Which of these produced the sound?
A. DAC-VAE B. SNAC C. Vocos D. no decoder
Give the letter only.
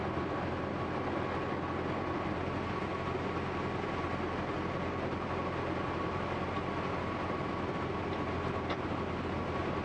D